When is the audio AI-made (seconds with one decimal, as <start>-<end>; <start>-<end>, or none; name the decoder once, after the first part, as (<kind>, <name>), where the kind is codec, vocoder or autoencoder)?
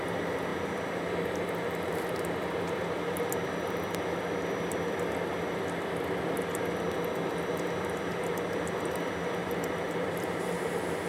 9.4-11.1 (vocoder, BigVGAN v2)